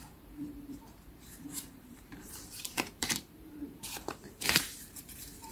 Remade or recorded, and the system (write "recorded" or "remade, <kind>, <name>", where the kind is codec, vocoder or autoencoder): remade, vocoder, BigVGAN v2